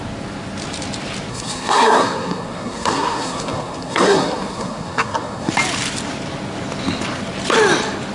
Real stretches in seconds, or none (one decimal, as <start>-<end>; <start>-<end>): 0.0-1.3; 5.5-8.1